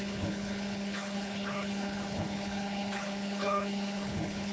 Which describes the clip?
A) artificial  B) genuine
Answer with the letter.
A